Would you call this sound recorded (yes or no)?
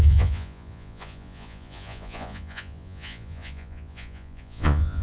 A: no